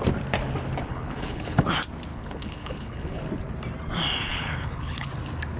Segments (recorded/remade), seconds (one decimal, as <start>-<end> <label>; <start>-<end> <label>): 0.0-0.9 recorded; 0.9-1.7 remade; 1.7-2.1 recorded; 2.1-3.2 remade; 3.2-4.3 recorded; 4.3-5.1 remade; 5.1-5.6 recorded

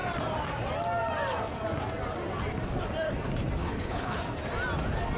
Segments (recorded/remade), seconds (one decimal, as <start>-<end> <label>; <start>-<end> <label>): 0.0-3.6 recorded; 3.6-4.2 remade; 4.2-5.2 recorded

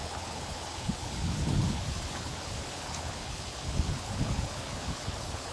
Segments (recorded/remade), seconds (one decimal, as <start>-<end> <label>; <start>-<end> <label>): 0.0-5.5 remade

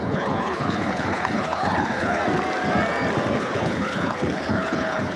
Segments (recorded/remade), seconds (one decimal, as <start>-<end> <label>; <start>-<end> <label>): 0.0-2.2 remade; 2.2-3.4 recorded; 3.4-5.2 remade

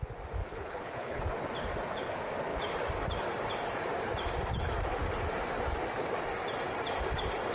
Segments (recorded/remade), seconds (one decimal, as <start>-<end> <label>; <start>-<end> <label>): 0.0-0.4 recorded; 0.4-1.2 remade; 1.2-7.5 recorded

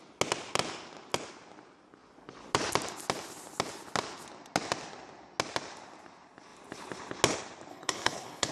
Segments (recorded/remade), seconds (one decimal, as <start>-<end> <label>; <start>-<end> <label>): 0.0-7.7 recorded; 7.7-8.5 remade